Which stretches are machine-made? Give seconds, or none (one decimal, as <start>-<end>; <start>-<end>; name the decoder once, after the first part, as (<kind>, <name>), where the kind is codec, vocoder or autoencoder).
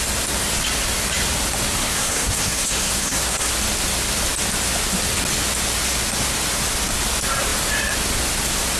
1.8-3.5 (codec, SNAC)